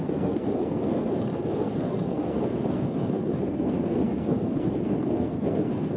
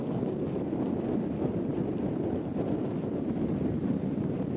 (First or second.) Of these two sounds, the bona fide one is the second